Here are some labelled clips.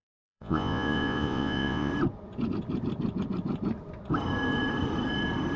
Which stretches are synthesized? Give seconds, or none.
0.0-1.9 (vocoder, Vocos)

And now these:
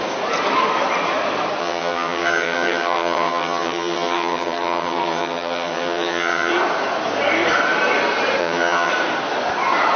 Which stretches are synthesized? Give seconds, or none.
1.6-6.5 (vocoder, HiFi-GAN); 8.4-8.9

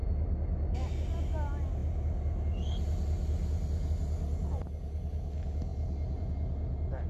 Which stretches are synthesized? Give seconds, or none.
none

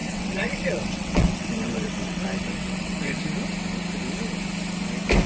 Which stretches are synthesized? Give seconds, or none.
0.0-3.2 (vocoder, WaveNeXt)